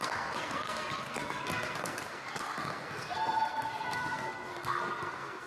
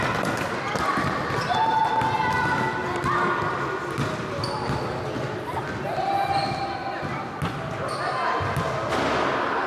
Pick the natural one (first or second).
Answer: second